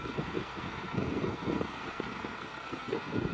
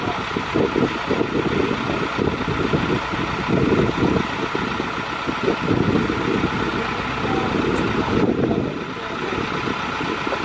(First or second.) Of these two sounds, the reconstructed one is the first